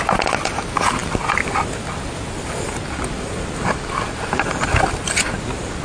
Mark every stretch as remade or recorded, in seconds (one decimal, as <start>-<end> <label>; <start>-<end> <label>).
0.0-5.8 recorded